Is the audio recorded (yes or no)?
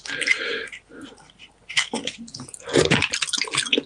yes